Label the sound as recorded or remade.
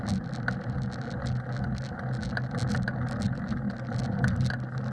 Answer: recorded